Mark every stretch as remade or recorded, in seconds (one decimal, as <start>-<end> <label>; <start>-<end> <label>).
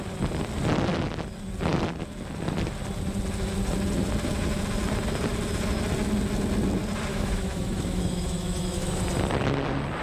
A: 0.0-7.1 recorded; 7.1-9.0 remade; 9.0-10.0 recorded